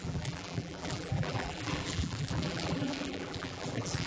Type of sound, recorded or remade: remade